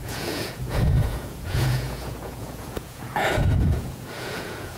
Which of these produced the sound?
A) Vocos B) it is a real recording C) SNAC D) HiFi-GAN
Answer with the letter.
A